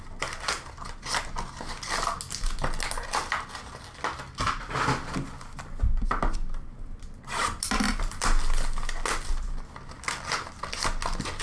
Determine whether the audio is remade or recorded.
recorded